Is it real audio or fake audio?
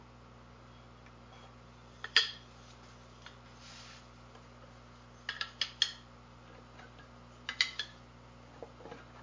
real